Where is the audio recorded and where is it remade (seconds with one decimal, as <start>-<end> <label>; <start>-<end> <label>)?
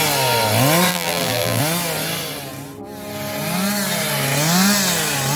0.0-0.9 recorded; 0.9-1.6 remade; 1.6-5.4 recorded